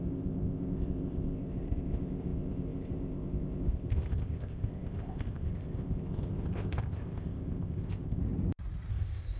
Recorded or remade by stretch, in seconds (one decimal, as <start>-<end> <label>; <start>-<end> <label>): 0.0-8.2 remade; 8.2-8.9 recorded; 8.9-9.4 remade